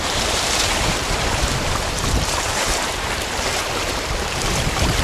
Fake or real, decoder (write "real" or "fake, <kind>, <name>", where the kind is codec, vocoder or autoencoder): fake, vocoder, BigVGAN v2